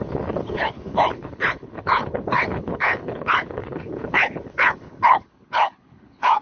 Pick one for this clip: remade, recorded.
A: remade